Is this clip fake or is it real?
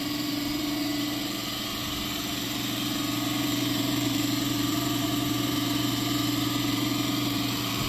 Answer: fake